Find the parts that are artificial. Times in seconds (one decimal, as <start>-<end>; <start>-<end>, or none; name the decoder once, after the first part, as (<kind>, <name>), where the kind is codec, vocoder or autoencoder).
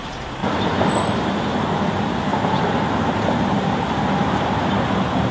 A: 2.3-3.8 (vocoder, BigVGAN v2)